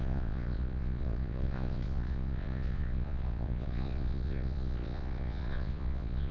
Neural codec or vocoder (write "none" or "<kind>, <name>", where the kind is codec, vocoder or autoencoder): vocoder, Vocos